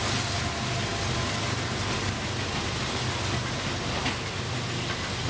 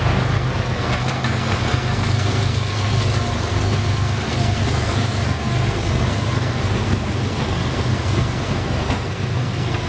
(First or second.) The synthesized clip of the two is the second